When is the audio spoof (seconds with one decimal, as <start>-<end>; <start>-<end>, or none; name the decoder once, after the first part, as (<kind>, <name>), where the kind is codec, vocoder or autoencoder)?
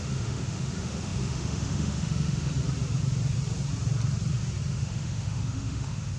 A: 0.0-2.5 (autoencoder, DAC-VAE); 4.7-6.2